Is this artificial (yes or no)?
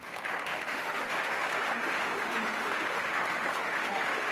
yes